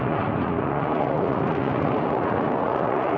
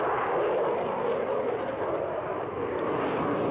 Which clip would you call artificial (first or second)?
first